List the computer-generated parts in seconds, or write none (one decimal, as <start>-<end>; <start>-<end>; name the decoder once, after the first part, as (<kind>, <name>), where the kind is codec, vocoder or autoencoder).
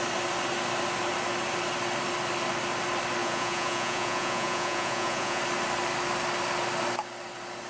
3.2-5.4 (vocoder, Vocos)